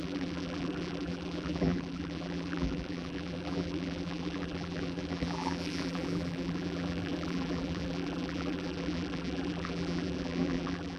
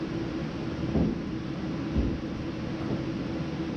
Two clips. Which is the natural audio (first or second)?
second